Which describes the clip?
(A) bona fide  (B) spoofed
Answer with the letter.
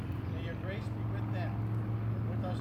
A